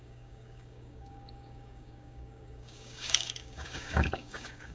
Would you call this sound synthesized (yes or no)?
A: yes